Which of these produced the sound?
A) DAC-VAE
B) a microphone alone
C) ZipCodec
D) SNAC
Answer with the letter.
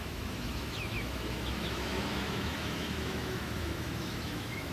A